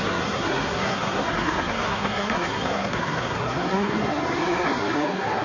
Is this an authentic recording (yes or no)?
no